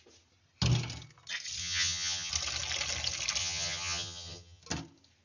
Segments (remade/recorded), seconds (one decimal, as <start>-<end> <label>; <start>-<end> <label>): 0.0-1.6 recorded; 1.6-2.3 remade; 2.3-3.4 recorded; 3.4-4.6 remade; 4.6-5.2 recorded